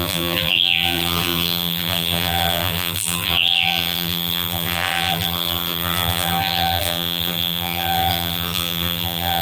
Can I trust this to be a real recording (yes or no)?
no